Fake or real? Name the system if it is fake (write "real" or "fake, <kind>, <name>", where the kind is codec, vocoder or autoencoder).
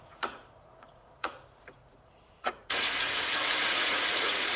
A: fake, vocoder, Vocos